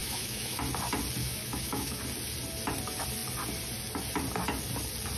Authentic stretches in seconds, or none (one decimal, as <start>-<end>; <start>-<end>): 0.6-1.2; 2.0-5.2